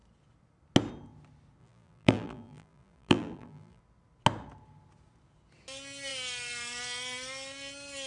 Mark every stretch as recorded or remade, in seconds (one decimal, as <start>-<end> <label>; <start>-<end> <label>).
0.0-1.6 recorded; 1.6-3.8 remade; 3.8-8.1 recorded